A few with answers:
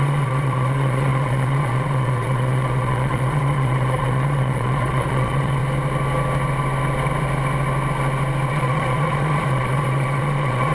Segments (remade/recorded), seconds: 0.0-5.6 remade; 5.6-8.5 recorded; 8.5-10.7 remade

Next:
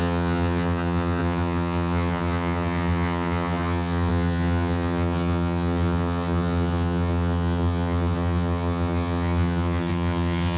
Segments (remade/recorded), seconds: 0.0-10.6 remade

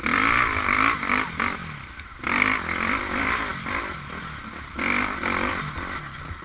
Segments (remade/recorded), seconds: 0.0-6.4 recorded

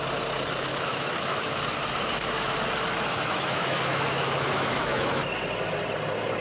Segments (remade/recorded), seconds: 0.0-0.7 recorded; 0.7-1.6 remade; 1.6-3.1 recorded; 3.1-5.2 remade; 5.2-6.4 recorded